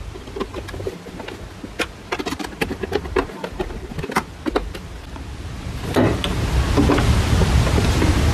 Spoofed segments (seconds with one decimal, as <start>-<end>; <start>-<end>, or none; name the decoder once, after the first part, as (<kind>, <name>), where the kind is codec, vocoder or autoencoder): 2.3-3.9 (vocoder, BigVGAN v2)